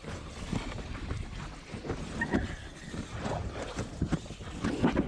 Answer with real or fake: real